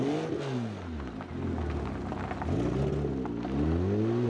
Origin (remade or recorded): recorded